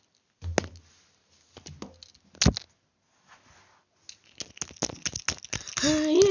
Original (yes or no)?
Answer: yes